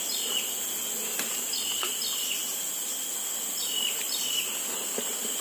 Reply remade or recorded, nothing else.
recorded